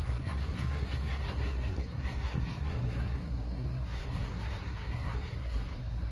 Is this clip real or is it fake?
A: fake